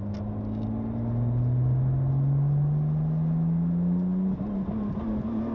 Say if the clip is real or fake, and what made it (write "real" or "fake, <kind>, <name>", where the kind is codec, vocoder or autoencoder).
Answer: real